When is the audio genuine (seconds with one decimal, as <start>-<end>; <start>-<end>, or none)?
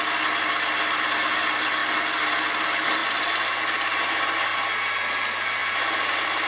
0.0-6.5